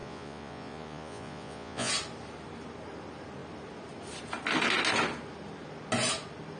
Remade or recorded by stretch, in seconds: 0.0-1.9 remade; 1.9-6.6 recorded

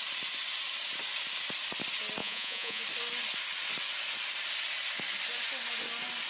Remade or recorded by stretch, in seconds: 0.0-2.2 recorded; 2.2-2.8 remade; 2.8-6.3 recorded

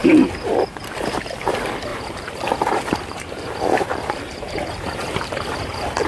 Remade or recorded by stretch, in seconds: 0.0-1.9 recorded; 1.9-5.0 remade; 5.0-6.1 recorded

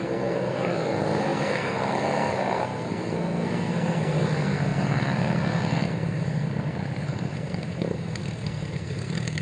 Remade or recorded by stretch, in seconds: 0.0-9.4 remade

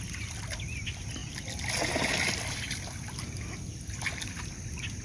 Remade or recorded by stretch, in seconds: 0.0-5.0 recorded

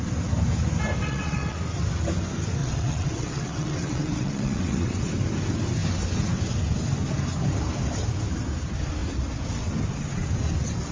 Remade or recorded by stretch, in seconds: 0.0-1.0 recorded; 1.0-1.6 remade; 1.6-2.6 recorded; 2.6-5.1 remade; 5.1-10.9 recorded

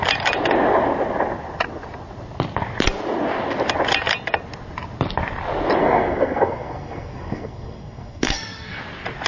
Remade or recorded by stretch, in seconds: 0.0-5.8 recorded; 5.8-8.8 remade; 8.8-9.3 recorded